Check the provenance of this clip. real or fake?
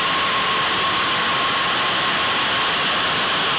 real